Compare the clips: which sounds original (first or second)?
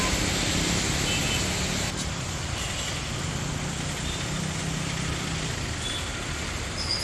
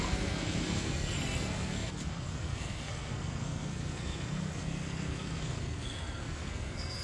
first